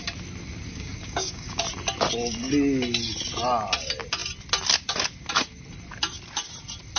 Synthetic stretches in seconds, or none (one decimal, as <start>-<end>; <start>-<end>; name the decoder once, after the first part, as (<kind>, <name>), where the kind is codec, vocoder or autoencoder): 0.7-1.6 (codec, DAC)

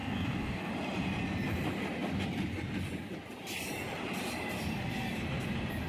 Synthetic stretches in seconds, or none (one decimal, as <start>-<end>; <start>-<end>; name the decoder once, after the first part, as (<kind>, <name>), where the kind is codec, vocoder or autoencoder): 0.0-0.7 (codec, DAC)